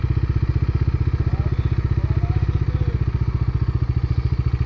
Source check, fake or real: real